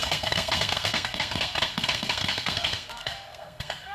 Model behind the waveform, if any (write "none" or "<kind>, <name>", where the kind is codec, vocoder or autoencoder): codec, SNAC